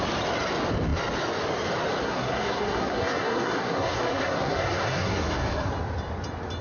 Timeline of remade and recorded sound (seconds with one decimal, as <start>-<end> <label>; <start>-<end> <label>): 0.0-2.0 recorded; 2.0-5.7 remade; 5.7-6.6 recorded